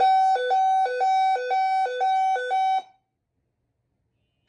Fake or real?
real